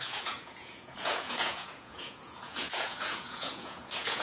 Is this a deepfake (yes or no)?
yes